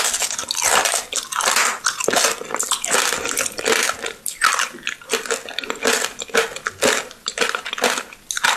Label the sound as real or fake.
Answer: real